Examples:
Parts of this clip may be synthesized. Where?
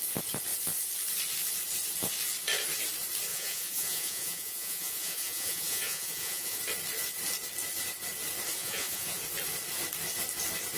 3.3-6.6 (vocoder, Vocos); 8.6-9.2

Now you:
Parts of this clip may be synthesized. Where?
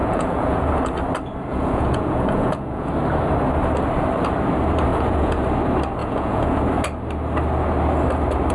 0.0-0.7 (vocoder, Vocos); 1.5-2.9; 4.9-5.4; 6.0-6.6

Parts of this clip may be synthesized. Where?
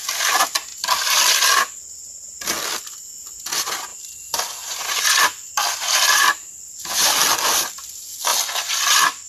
none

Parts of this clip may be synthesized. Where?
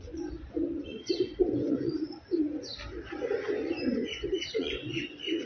0.0-2.7 (vocoder, Vocos); 3.5-5.5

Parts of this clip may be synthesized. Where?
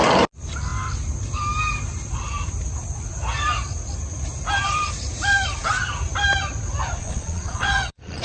7.0-8.2 (vocoder, Vocos)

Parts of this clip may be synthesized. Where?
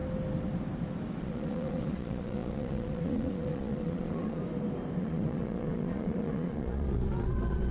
1.2-4.4 (vocoder, Vocos); 5.0-7.7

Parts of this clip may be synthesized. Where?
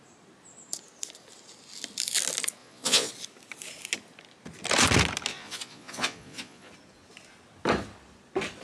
2.6-3.1 (vocoder, Vocos); 5.3-6.7